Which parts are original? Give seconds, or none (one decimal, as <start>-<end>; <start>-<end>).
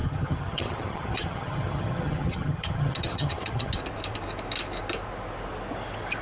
3.7-6.2